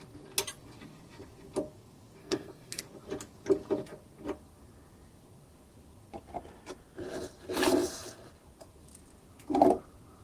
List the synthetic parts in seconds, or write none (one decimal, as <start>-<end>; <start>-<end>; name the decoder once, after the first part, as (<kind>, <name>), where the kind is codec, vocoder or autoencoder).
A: 2.2-2.8 (codec, SNAC)